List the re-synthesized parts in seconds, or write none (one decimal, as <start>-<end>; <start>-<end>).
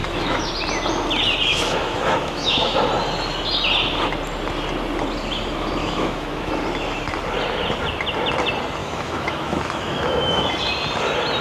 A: 0.0-0.5; 1.5-2.8; 5.8-6.5; 8.8-10.5